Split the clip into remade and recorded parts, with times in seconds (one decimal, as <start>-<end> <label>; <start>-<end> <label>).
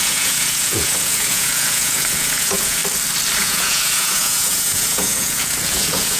0.0-2.8 remade; 2.8-3.4 recorded; 3.4-6.2 remade